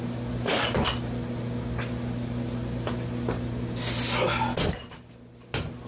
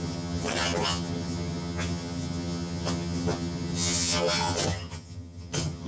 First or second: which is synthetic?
second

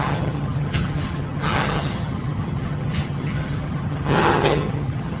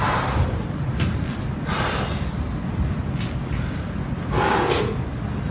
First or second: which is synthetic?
first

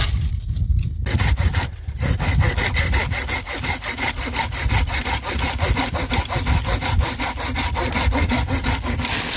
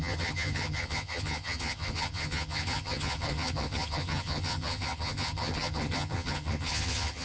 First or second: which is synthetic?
second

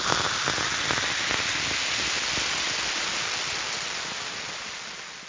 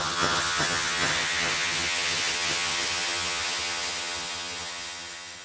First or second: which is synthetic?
second